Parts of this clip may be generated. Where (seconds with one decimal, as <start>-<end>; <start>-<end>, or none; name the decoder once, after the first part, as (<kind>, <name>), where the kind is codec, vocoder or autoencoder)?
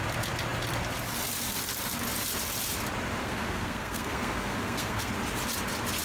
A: 3.2-5.1 (codec, SNAC)